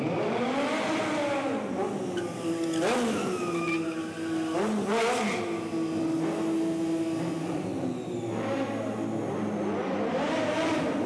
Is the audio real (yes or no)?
yes